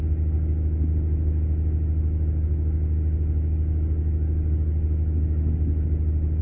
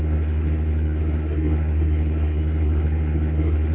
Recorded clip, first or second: first